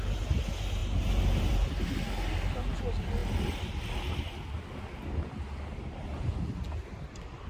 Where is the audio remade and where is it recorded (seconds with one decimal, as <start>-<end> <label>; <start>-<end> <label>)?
0.0-7.5 recorded